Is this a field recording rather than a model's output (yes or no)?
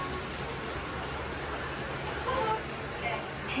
yes